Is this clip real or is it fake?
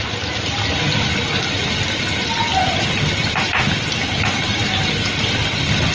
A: real